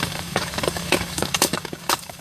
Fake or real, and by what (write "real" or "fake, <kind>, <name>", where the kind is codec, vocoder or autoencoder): fake, codec, DAC